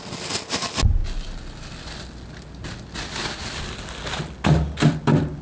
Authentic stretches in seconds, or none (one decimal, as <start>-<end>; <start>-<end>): 0.0-5.4